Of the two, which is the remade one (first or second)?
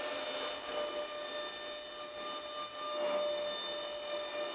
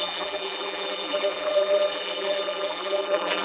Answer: second